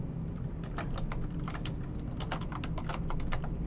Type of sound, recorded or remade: recorded